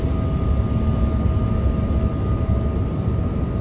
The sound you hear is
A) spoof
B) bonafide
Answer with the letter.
B